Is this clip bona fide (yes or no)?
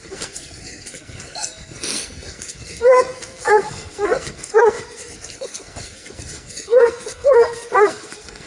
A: no